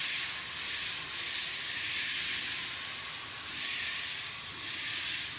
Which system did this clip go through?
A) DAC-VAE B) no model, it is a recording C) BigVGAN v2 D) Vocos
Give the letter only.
B